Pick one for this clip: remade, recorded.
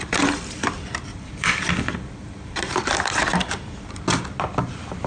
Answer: remade